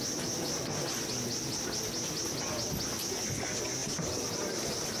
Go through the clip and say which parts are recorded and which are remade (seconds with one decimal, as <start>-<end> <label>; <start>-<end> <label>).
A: 0.0-5.0 recorded